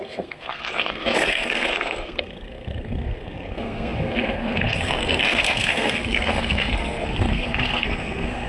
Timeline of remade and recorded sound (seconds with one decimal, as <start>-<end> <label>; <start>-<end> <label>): 0.0-8.5 remade

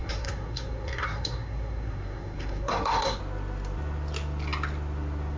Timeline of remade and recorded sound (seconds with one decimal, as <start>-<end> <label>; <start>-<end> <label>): 0.0-3.2 remade; 3.2-5.4 recorded

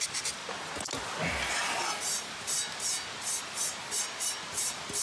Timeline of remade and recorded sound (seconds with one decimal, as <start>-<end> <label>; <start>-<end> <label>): 0.0-5.0 recorded

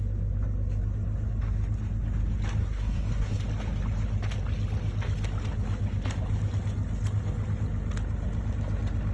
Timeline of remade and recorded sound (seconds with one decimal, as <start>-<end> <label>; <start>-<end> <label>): 0.0-2.6 recorded; 2.6-3.4 remade; 3.4-9.1 recorded

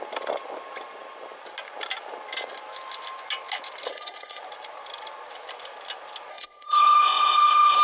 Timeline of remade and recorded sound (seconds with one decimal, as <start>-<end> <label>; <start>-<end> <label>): 0.0-3.9 recorded; 3.9-4.4 remade; 4.4-6.3 recorded; 6.3-7.8 remade

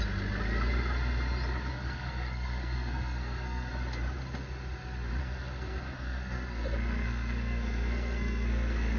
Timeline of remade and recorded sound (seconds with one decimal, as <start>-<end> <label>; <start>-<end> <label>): 0.0-1.7 recorded; 1.7-3.7 remade; 3.7-5.2 recorded; 5.2-9.0 remade